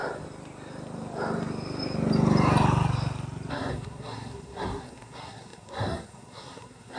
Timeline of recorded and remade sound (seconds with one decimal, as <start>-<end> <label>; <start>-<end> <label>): 0.0-3.5 recorded; 3.5-7.0 remade